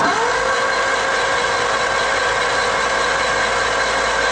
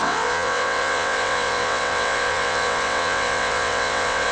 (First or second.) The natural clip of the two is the first